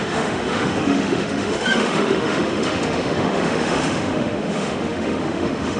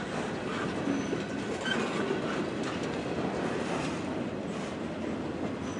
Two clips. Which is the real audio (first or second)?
second